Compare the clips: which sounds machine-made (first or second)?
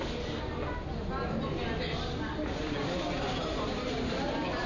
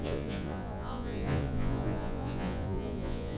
second